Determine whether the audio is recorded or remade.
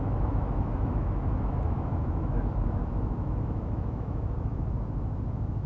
remade